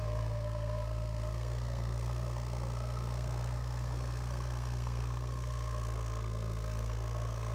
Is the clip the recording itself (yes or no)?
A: no